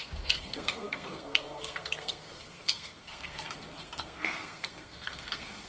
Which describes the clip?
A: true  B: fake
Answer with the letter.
B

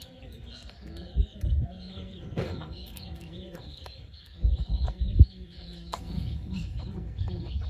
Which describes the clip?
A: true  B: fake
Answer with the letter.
B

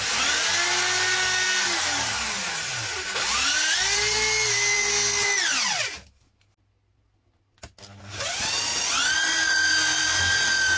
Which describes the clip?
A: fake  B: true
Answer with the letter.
B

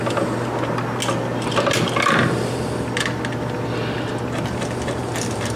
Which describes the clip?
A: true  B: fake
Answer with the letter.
A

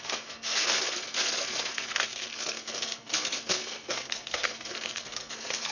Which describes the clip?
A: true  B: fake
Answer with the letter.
B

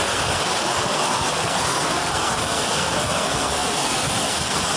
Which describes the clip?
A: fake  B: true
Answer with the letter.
A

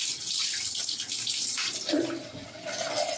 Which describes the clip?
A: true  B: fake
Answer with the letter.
A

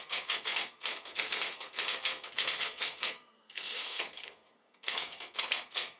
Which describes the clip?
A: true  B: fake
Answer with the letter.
B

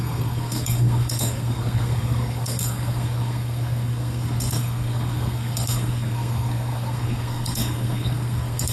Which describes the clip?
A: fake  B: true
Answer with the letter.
A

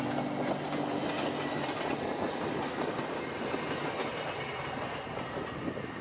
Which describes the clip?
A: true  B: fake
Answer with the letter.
A